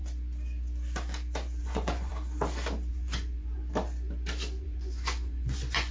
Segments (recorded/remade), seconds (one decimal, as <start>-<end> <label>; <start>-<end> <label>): 0.0-1.6 recorded; 1.6-2.1 remade; 2.1-2.9 recorded; 2.9-3.6 remade; 3.6-4.6 recorded; 4.6-5.9 remade